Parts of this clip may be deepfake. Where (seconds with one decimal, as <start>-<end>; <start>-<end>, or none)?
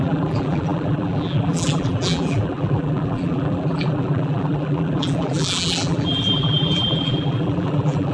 0.0-8.1